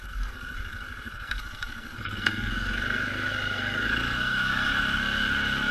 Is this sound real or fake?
fake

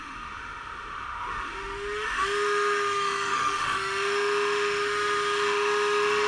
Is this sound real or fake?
fake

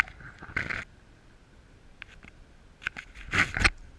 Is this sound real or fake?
real